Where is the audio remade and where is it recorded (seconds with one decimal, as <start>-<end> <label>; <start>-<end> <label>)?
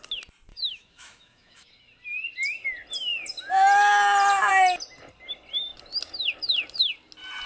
0.0-0.5 recorded; 0.5-1.7 remade; 1.7-7.5 recorded